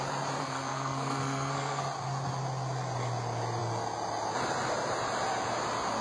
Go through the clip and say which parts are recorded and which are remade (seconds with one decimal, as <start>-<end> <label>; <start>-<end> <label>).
0.0-0.4 recorded; 0.4-1.8 remade; 1.8-6.0 recorded

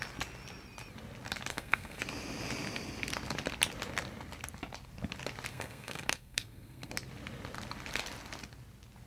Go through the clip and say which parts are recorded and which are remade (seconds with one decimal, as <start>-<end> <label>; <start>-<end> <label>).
0.0-1.5 recorded; 1.5-2.0 remade; 2.0-5.5 recorded; 5.5-6.9 remade; 6.9-9.1 recorded

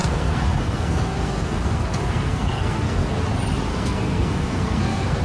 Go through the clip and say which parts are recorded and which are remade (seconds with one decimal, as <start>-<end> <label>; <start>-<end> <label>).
0.0-3.1 remade; 3.1-3.7 recorded; 3.7-5.2 remade

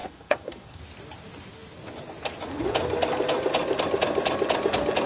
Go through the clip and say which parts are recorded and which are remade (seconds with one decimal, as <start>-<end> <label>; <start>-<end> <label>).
0.0-0.8 remade; 0.8-5.1 recorded

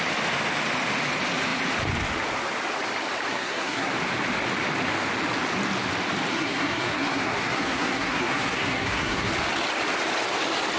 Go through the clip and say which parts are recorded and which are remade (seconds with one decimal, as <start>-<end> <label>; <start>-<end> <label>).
0.0-3.3 recorded; 3.3-3.9 remade; 3.9-6.3 recorded; 6.3-9.3 remade; 9.3-10.8 recorded

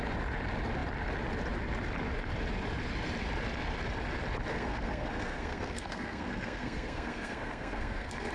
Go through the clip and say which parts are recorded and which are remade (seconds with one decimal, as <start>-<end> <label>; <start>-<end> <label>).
0.0-4.5 recorded; 4.5-8.3 remade